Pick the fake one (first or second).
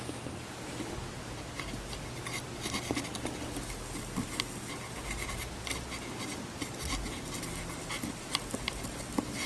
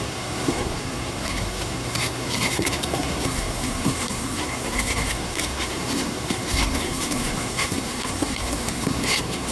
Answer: second